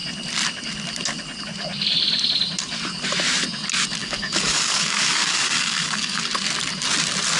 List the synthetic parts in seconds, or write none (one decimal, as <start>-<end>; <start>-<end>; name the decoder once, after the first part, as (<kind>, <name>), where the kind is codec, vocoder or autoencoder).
4.0-6.2 (codec, DAC)